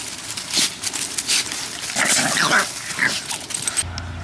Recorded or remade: recorded